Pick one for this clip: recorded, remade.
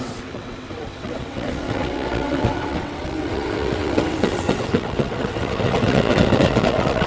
remade